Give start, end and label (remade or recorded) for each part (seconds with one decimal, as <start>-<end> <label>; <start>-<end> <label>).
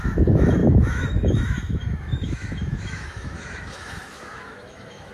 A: 0.0-5.1 remade